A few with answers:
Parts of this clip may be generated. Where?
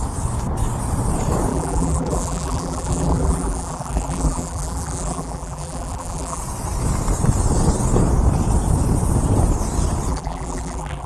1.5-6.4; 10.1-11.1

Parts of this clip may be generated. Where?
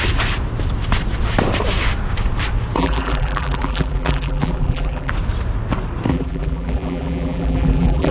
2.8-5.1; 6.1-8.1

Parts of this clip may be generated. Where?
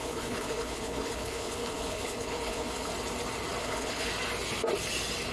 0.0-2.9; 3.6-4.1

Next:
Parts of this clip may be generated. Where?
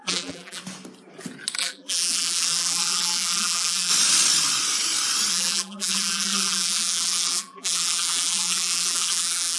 0.0-0.6; 1.6-3.9; 5.3-9.6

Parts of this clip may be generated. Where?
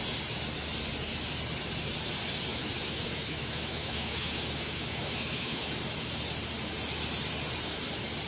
2.5-5.7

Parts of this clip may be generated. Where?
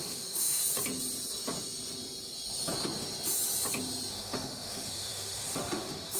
0.0-0.6; 4.1-6.2